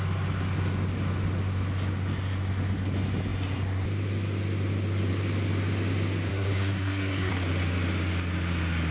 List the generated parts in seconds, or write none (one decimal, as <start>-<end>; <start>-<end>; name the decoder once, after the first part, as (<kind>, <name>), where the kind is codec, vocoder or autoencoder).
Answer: 6.3-7.3 (codec, SNAC)